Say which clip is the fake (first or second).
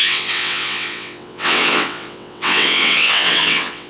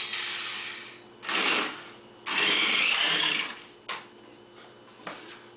first